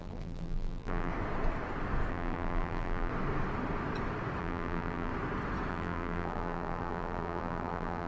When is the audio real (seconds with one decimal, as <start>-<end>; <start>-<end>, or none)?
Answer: 1.1-2.1; 3.1-4.4; 5.1-5.7